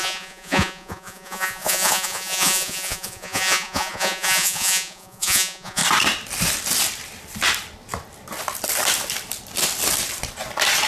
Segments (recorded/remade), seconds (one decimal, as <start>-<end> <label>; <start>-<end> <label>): 0.0-5.8 remade; 5.8-10.9 recorded